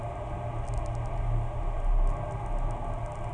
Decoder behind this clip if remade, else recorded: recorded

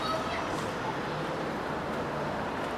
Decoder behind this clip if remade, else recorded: recorded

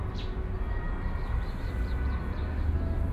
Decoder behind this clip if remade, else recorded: recorded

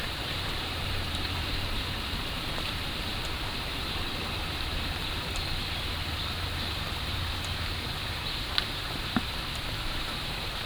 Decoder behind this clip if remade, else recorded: remade, vocoder, BigVGAN v2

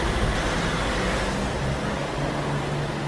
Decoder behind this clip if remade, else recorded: recorded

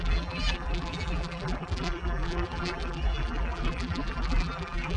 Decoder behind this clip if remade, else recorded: remade, vocoder, BigVGAN v2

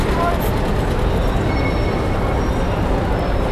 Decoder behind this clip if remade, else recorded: recorded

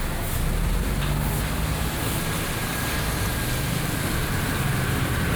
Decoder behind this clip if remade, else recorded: recorded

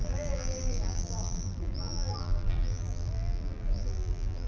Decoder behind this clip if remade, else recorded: remade, vocoder, BigVGAN v2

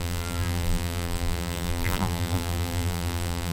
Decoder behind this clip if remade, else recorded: remade, vocoder, BigVGAN v2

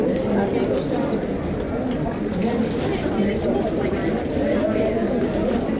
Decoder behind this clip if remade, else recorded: recorded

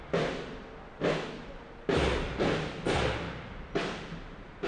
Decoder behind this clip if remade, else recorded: recorded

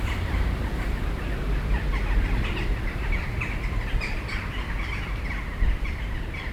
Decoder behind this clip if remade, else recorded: remade, vocoder, BigVGAN v2